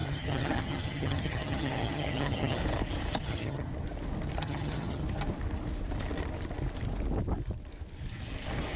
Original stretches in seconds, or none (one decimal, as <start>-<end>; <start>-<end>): 2.6-3.2; 3.7-4.4; 5.0-8.8

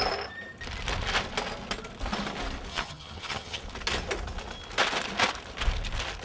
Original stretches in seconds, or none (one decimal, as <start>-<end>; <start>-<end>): 0.0-2.7; 3.6-6.2

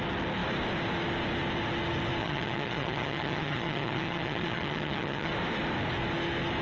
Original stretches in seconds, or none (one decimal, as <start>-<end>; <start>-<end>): 0.0-2.2; 5.3-6.6

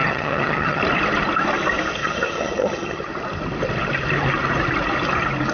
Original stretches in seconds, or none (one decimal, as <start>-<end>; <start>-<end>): 0.8-2.0; 3.1-5.5

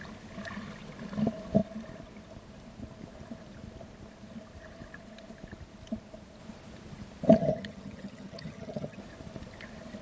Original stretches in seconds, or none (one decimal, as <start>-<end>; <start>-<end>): 0.0-7.4; 9.0-10.0

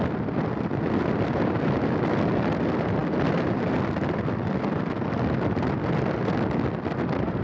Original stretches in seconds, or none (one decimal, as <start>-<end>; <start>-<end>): 0.0-7.4